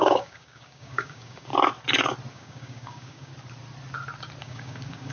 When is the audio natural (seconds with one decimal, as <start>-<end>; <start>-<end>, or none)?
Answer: 1.5-2.3; 3.3-4.4